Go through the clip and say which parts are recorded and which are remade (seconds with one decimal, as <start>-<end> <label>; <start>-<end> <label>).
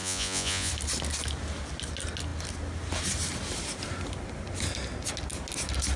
0.0-0.7 remade; 0.7-6.0 recorded